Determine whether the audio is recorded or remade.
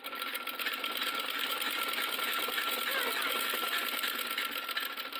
recorded